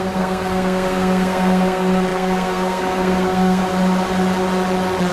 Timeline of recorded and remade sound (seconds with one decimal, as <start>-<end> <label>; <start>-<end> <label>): 0.0-3.6 remade; 3.6-5.1 recorded